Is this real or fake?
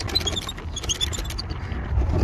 real